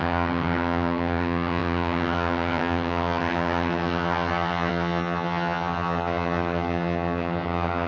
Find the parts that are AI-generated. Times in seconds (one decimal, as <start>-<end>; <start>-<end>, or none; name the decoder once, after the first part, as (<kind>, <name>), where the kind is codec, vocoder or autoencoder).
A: 0.0-7.9 (vocoder, HiFi-GAN)